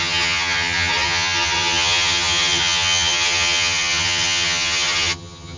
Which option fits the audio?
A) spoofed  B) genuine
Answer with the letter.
A